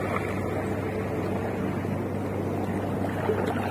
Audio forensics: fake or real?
real